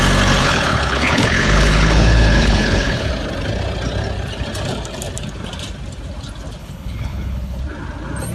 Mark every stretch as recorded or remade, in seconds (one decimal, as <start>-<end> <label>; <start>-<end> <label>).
0.0-0.4 recorded; 0.4-3.1 remade; 3.1-6.6 recorded; 6.6-7.6 remade; 7.6-8.3 recorded